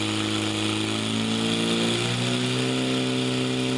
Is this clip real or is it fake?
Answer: real